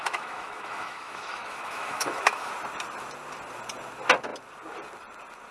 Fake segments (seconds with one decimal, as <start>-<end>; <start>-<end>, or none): 0.0-2.5